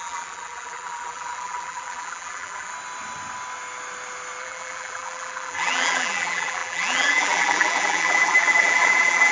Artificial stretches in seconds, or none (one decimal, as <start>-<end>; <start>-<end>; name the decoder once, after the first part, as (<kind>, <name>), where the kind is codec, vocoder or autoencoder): 0.0-2.7 (vocoder, BigVGAN v2); 4.4-9.3